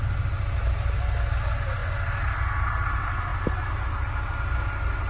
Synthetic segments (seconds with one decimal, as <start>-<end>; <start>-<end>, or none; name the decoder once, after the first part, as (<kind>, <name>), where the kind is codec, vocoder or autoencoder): none